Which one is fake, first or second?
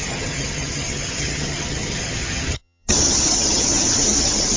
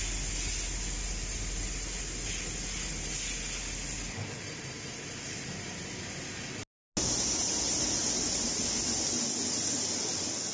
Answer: first